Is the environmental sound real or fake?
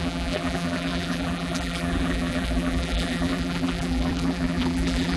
fake